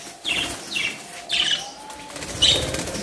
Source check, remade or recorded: recorded